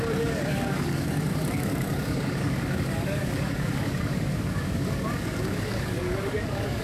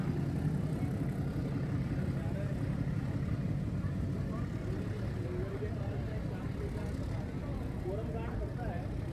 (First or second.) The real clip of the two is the second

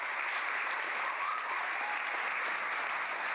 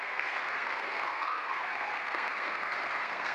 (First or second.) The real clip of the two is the first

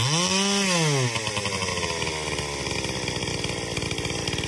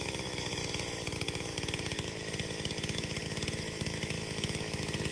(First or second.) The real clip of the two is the first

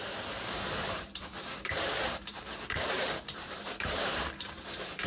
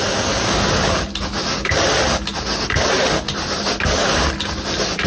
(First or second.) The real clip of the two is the second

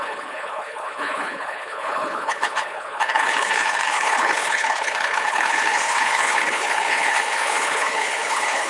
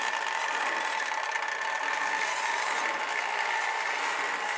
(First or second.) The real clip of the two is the second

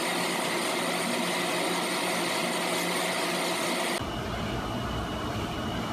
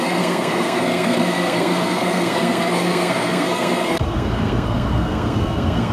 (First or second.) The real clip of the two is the first